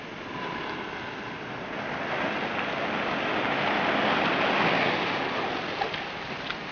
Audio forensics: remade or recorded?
recorded